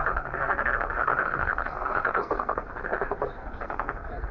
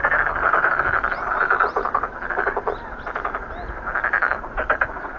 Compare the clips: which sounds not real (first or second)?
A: first